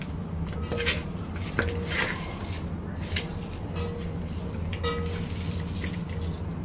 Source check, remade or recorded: recorded